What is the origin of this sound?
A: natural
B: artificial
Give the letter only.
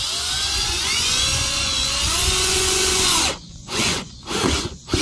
B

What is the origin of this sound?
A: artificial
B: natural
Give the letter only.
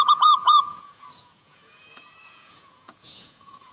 A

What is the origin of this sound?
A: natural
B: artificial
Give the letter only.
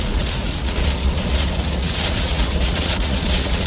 B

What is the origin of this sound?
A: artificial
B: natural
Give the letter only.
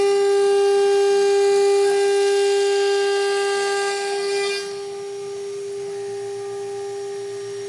B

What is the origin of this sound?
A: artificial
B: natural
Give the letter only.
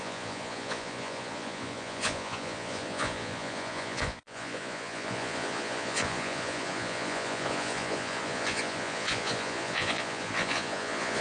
A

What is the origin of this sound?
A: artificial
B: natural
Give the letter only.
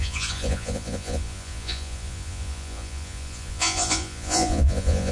A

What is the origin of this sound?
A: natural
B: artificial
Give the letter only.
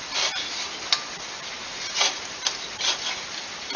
A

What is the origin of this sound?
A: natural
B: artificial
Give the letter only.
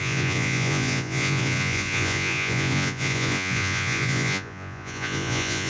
B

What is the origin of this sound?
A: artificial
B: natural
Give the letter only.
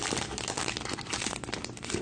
B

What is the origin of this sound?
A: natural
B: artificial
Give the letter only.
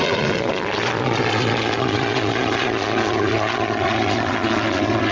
B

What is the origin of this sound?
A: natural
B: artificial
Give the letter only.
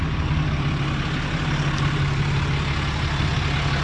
A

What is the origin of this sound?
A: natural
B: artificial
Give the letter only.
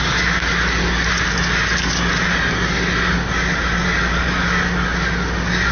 A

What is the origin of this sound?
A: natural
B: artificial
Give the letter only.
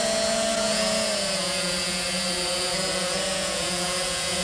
B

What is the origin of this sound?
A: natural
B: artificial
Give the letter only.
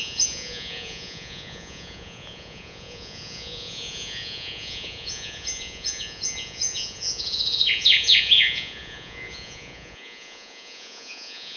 B